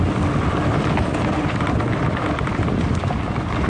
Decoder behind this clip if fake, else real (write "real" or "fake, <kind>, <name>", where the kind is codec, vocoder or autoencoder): real